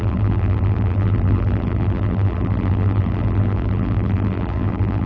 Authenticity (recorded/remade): remade